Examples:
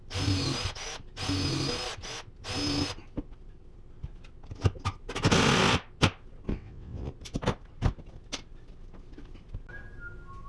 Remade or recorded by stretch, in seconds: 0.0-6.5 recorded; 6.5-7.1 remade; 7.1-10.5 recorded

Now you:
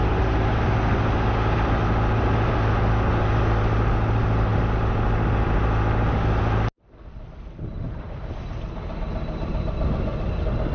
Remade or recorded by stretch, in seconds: 0.0-10.7 recorded

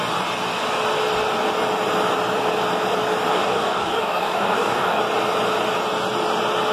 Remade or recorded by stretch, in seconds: 0.0-3.3 recorded; 3.3-5.0 remade; 5.0-6.7 recorded

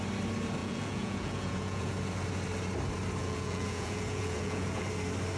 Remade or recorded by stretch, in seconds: 0.0-0.6 recorded; 0.6-1.9 remade; 1.9-3.2 recorded; 3.2-4.9 remade; 4.9-5.4 recorded

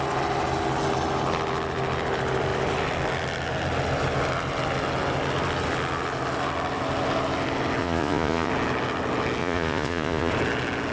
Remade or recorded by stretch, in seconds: 0.0-7.8 recorded; 7.8-8.5 remade; 8.5-9.4 recorded; 9.4-10.3 remade; 10.3-10.9 recorded